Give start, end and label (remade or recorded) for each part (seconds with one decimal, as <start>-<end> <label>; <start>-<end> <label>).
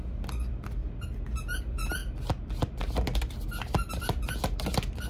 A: 0.0-5.1 recorded